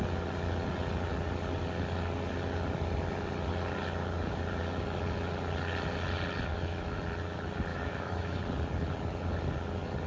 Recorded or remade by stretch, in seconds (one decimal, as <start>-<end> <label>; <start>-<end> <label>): 0.0-6.5 recorded; 6.5-7.0 remade; 7.0-7.7 recorded; 7.7-8.4 remade; 8.4-10.1 recorded